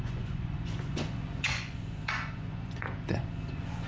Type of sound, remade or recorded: remade